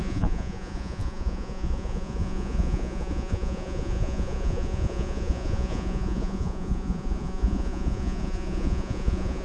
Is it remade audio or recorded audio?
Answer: remade